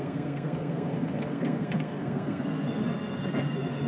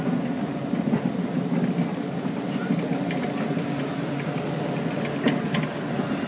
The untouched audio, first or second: second